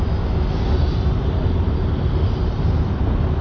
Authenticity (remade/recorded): recorded